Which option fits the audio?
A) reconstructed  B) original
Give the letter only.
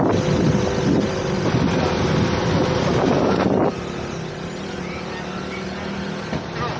B